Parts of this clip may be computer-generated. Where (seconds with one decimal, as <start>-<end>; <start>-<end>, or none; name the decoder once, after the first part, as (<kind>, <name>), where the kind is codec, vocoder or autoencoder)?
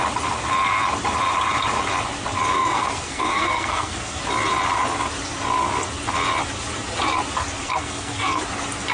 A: 2.5-4.2 (codec, SNAC); 7.6-8.4